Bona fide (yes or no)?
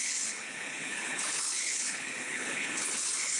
no